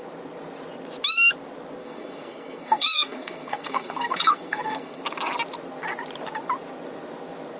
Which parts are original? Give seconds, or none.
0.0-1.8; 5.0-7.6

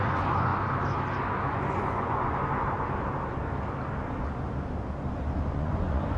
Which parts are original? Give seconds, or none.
0.5-1.5; 2.4-5.5

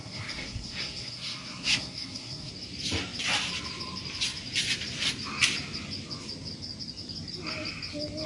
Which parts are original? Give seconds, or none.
2.5-8.3

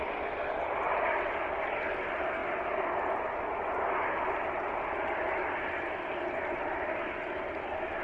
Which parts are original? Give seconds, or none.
0.0-8.0